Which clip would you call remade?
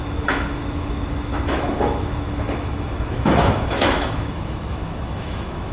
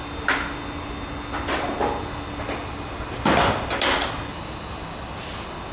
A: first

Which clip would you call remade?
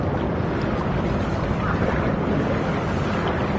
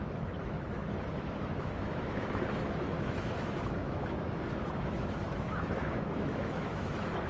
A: second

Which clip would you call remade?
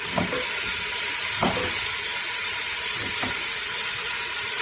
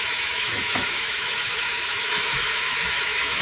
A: second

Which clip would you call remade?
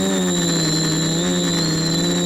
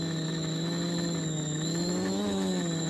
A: second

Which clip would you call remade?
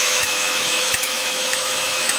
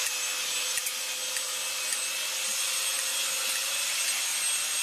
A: first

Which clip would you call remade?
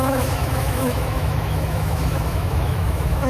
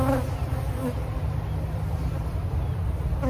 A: first